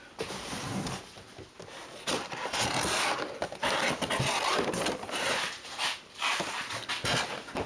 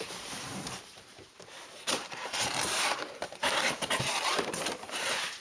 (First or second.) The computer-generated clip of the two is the second